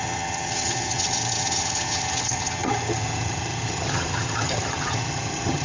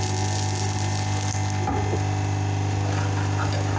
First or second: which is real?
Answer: second